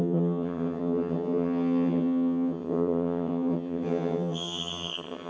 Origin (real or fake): fake